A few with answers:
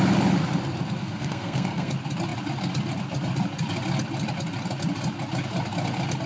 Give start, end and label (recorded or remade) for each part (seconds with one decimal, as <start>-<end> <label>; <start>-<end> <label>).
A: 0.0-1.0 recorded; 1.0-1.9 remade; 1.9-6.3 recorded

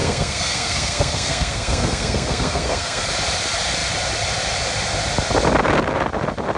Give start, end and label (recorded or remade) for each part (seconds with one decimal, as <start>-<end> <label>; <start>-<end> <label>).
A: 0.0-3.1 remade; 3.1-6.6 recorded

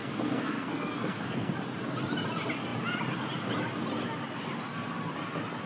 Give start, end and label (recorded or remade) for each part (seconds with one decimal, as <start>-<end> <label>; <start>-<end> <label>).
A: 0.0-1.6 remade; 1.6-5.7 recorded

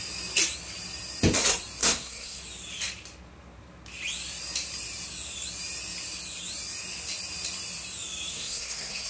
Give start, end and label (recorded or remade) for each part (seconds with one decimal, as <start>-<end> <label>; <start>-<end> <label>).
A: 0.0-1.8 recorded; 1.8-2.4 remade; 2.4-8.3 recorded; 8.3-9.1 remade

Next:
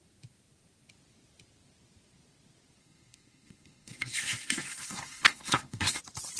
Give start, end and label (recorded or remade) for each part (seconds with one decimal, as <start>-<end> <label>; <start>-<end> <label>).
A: 0.0-2.8 recorded; 2.8-6.0 remade; 6.0-6.4 recorded

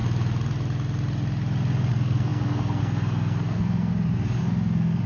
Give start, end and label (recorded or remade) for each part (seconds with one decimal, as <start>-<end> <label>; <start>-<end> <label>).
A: 0.0-1.9 recorded; 1.9-3.9 remade; 3.9-4.4 recorded; 4.4-5.1 remade

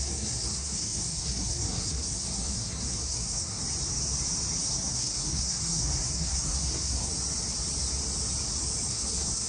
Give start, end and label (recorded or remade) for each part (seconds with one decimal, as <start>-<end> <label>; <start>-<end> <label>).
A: 0.0-3.6 remade; 3.6-4.6 recorded; 4.6-7.1 remade; 7.1-8.9 recorded; 8.9-9.5 remade